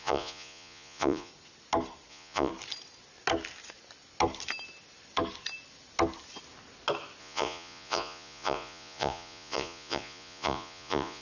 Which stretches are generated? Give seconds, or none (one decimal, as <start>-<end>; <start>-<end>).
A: 0.0-1.3; 2.1-2.5; 7.2-11.2